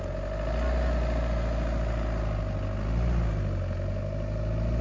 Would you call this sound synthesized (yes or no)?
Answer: no